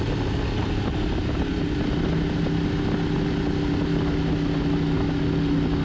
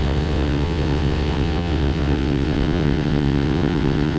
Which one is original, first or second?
first